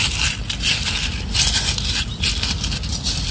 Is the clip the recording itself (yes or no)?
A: yes